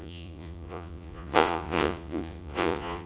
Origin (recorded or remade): remade